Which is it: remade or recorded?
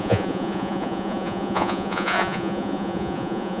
remade